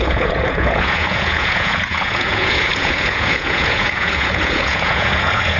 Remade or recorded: remade